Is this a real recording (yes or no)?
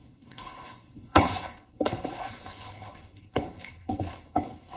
no